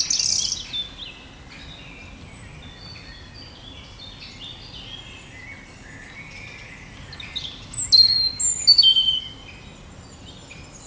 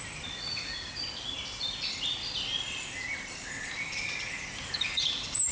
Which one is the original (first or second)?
first